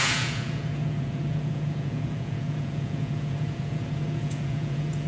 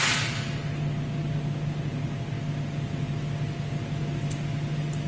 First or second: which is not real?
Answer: first